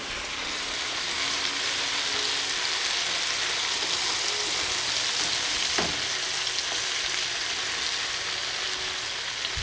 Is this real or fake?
real